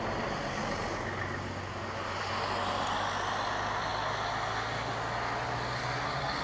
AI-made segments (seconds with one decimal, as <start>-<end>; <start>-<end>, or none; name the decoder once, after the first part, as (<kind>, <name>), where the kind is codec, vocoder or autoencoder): none